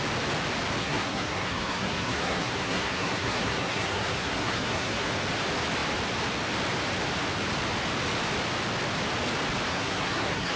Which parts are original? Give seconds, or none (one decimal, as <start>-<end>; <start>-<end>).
0.0-0.8; 5.1-9.7